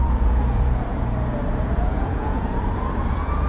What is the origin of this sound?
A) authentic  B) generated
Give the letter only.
B